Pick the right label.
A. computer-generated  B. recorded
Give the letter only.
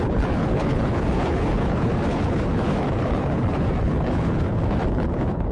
A